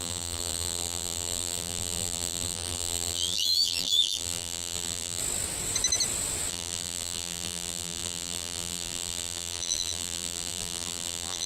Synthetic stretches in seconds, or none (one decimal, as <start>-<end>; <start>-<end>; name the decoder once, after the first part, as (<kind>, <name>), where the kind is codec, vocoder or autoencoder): 0.0-5.2 (vocoder, BigVGAN v2); 6.5-11.5